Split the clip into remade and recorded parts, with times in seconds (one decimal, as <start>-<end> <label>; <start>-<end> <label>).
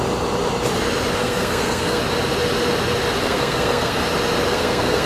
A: 0.0-1.2 recorded; 1.2-2.0 remade; 2.0-3.2 recorded; 3.2-4.0 remade; 4.0-4.5 recorded; 4.5-5.1 remade